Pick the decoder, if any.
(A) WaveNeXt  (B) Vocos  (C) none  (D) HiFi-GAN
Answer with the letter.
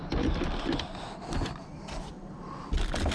C